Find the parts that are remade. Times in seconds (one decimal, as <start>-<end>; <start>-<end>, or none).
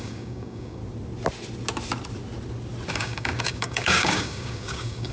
0.0-0.8; 2.9-5.1